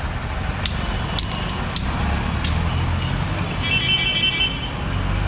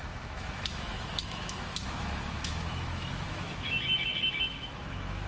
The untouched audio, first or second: first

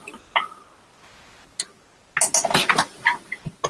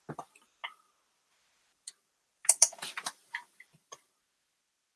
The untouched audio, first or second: first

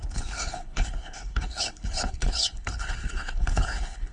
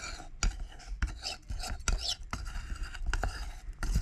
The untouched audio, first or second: second